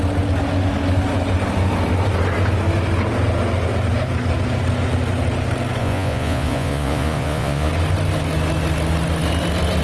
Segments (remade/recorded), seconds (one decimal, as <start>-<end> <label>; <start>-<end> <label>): 0.0-5.8 recorded; 5.8-7.7 remade; 7.7-9.8 recorded